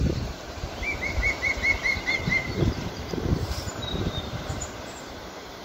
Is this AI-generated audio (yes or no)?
yes